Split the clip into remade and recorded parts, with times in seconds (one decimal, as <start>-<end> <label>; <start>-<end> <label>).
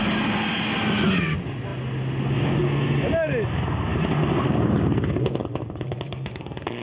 0.0-6.8 recorded